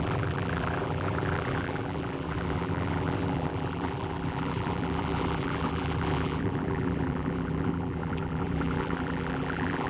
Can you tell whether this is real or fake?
fake